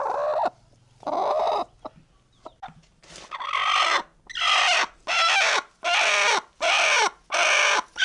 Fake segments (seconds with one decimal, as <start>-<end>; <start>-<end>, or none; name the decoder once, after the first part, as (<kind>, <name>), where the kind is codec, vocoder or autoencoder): none